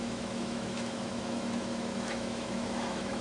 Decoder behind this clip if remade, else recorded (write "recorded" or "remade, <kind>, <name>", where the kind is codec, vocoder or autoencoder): remade, autoencoder, DAC-VAE